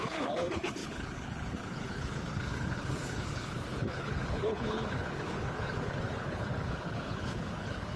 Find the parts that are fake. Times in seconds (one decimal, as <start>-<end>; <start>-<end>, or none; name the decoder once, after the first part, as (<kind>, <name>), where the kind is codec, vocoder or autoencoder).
0.0-8.0 (codec, HILCodec)